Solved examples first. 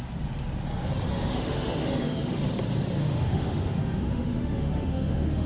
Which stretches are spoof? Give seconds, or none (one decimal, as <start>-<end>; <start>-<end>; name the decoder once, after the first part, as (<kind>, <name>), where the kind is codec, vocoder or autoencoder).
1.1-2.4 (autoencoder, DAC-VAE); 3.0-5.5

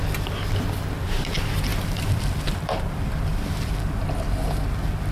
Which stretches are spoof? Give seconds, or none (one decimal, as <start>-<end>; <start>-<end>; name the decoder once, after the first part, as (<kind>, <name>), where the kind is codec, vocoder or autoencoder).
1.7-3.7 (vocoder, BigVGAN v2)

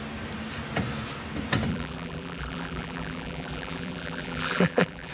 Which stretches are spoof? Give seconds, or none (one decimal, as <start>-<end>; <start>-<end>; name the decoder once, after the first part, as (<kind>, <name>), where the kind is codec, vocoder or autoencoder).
1.7-5.1 (vocoder, BigVGAN v2)